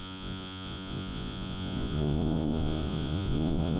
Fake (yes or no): yes